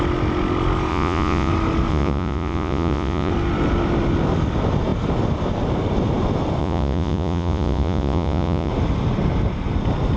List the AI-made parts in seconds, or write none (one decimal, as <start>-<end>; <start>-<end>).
0.9-1.5; 1.9-3.3; 6.6-8.7